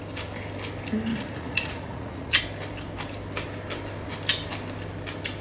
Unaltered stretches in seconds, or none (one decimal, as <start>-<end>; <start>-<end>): 0.0-1.1; 2.4-5.4